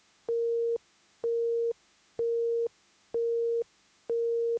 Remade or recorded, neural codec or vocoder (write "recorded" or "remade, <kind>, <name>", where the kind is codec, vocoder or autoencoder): remade, autoencoder, DAC-VAE